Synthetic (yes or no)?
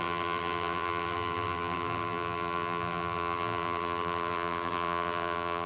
yes